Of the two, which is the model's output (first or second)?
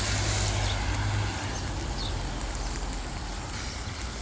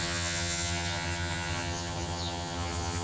second